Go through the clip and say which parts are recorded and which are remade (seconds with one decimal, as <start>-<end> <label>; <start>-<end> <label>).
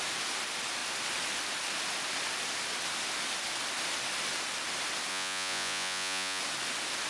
0.0-5.1 recorded; 5.1-6.4 remade; 6.4-7.1 recorded